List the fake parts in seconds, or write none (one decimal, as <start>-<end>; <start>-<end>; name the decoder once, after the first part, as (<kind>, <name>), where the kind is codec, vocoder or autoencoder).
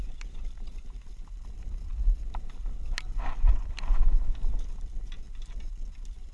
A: none